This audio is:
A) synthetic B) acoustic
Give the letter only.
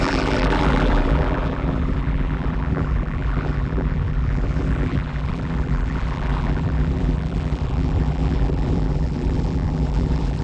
A